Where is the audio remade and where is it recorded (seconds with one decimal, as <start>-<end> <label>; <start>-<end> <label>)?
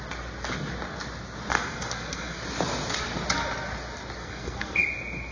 0.0-1.5 recorded; 1.5-2.4 remade; 2.4-4.2 recorded; 4.2-4.8 remade; 4.8-5.3 recorded